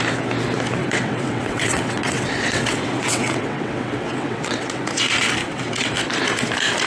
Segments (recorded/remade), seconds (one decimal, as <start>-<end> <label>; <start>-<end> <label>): 0.0-0.8 recorded; 0.8-4.9 remade; 4.9-5.4 recorded; 5.4-5.9 remade; 5.9-6.9 recorded